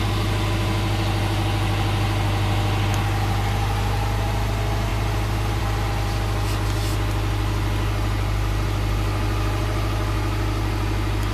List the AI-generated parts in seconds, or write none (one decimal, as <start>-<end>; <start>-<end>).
none

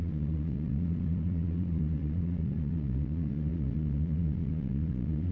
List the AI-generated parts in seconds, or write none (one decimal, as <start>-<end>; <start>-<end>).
0.0-5.3